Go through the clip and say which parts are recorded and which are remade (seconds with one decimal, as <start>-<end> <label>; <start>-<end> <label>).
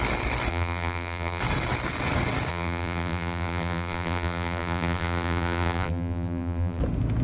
0.0-0.5 recorded; 0.5-1.4 remade; 1.4-2.5 recorded; 2.5-6.8 remade; 6.8-7.2 recorded